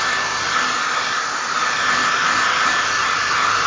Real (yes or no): yes